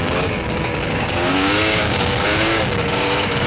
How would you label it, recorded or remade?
remade